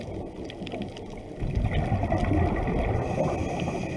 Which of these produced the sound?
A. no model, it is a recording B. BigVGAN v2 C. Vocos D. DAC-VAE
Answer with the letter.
A